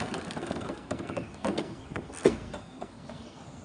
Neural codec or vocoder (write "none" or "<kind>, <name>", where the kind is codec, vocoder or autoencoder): codec, SNAC